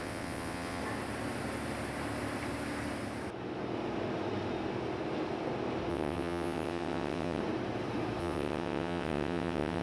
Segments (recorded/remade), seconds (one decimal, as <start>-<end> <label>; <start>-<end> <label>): 0.0-0.8 remade; 0.8-5.9 recorded; 5.9-7.4 remade; 7.4-8.2 recorded; 8.2-9.8 remade